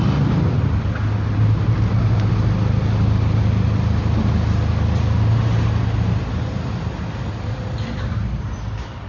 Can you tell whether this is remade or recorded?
recorded